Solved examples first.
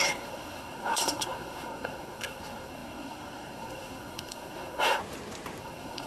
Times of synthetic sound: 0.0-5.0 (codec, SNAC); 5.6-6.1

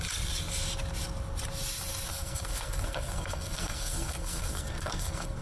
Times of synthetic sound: 2.1-5.4 (codec, SNAC)